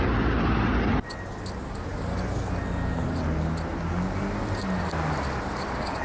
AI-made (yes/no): no